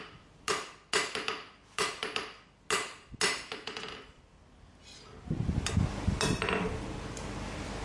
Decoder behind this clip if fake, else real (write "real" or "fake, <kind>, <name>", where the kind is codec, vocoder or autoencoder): real